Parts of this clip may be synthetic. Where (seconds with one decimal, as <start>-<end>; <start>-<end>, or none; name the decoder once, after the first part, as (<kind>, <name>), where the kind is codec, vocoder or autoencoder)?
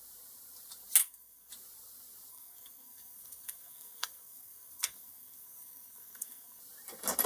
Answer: 1.0-1.5 (codec, SNAC); 2.3-6.6